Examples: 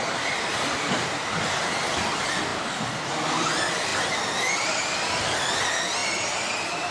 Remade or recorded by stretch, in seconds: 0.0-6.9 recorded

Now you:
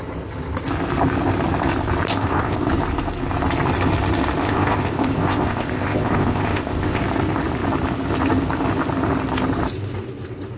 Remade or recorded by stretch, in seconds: 0.0-2.1 recorded; 2.1-2.7 remade; 2.7-4.4 recorded; 4.4-7.0 remade; 7.0-10.6 recorded

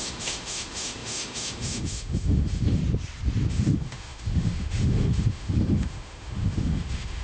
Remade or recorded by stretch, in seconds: 0.0-2.8 remade; 2.8-3.5 recorded; 3.5-7.2 remade

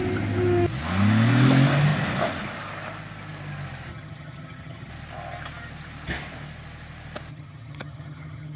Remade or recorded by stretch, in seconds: 0.0-3.9 recorded; 3.9-4.9 remade; 4.9-7.3 recorded; 7.3-8.6 remade

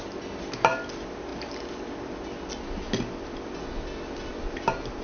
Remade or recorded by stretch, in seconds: 0.0-5.0 recorded